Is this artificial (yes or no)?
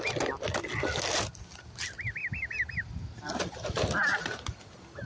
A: no